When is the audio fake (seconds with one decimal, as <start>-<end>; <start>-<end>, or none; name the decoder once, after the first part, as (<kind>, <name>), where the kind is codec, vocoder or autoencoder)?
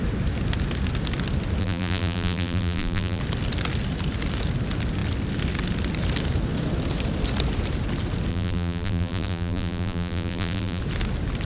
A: 1.6-3.2 (vocoder, BigVGAN v2); 8.3-10.8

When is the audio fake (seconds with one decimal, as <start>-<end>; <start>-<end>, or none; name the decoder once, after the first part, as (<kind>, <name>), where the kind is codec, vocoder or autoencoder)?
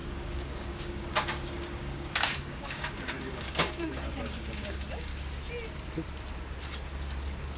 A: 0.0-5.1 (codec, DAC)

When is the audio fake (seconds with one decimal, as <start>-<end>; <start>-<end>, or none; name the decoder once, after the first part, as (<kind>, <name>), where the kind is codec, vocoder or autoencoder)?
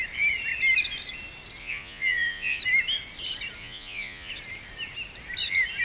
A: 1.6-2.6 (vocoder, Vocos); 3.6-4.3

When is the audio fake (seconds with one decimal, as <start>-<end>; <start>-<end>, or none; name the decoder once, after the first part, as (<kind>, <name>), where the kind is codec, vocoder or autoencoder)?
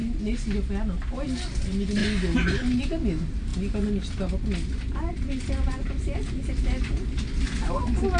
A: none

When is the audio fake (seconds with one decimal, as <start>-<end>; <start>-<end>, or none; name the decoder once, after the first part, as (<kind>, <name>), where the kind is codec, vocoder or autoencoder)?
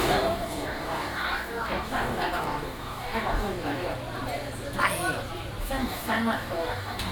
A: 0.0-3.9 (codec, DAC); 5.6-7.1